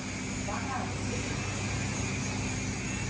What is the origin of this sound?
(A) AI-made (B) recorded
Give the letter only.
B